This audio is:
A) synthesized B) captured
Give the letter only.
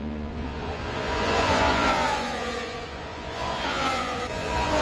A